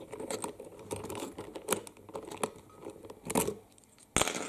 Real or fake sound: real